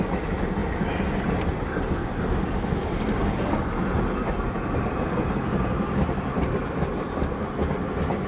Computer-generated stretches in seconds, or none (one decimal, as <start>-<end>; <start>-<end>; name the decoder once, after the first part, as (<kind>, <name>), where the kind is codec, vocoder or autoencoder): none